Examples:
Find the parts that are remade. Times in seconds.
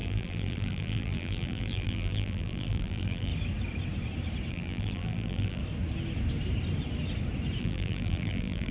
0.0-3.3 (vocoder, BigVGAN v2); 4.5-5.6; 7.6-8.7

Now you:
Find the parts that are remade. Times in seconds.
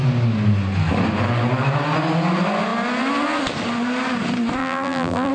4.6-5.3 (vocoder, BigVGAN v2)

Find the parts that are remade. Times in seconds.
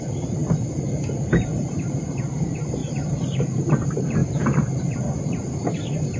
0.0-0.4 (vocoder, BigVGAN v2); 1.3-6.2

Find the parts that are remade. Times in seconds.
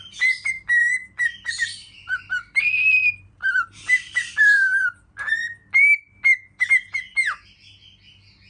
1.8-3.8 (vocoder, BigVGAN v2)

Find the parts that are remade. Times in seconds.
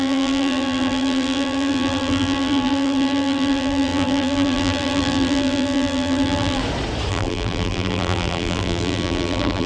0.0-6.6 (vocoder, BigVGAN v2); 7.1-9.7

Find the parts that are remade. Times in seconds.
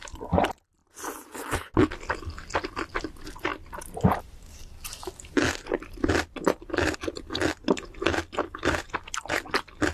none